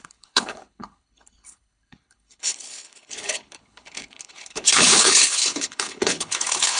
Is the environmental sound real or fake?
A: fake